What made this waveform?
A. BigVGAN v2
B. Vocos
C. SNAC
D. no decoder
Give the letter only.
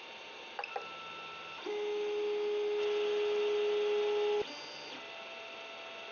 D